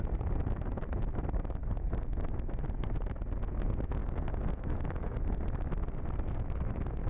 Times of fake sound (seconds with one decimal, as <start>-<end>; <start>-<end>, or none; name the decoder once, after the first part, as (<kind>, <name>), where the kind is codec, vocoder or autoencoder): 1.6-2.5 (autoencoder, DAC-VAE); 4.0-5.6